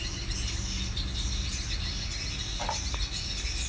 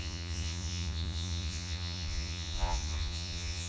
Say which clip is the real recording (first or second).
first